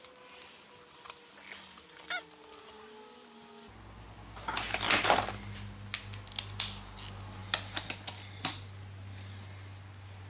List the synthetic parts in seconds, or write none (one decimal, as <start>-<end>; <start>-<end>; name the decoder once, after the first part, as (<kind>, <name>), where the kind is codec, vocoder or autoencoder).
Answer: none